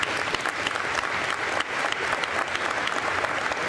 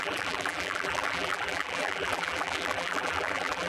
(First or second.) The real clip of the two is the first